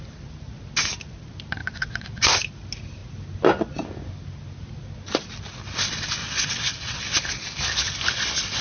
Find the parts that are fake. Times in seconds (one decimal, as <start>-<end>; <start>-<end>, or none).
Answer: 1.6-2.3; 6.2-7.0